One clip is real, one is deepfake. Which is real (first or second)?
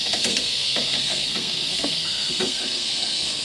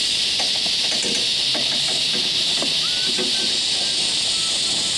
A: second